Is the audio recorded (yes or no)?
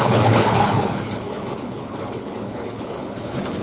no